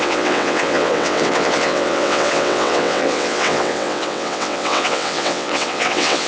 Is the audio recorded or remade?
remade